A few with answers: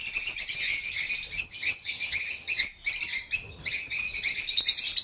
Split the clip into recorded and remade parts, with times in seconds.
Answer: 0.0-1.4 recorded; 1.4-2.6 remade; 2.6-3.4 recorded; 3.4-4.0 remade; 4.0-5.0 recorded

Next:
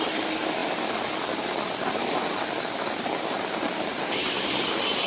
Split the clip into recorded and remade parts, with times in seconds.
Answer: 0.0-5.1 recorded